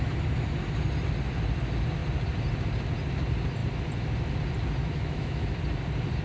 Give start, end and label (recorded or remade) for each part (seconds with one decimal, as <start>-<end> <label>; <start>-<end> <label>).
0.0-4.8 recorded; 4.8-5.6 remade; 5.6-6.2 recorded